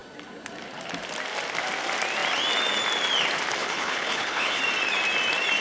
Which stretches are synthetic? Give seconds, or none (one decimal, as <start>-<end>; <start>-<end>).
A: 3.6-4.6